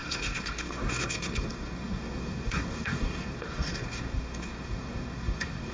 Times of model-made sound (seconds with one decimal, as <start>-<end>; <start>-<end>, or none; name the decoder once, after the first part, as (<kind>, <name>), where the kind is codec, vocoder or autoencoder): 0.0-5.7 (codec, SNAC)